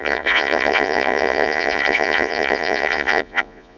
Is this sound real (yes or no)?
no